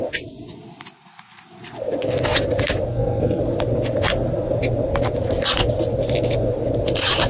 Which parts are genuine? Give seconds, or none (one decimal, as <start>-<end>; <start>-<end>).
0.0-2.9; 3.4-7.3